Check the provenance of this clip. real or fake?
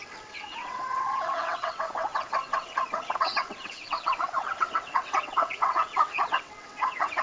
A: fake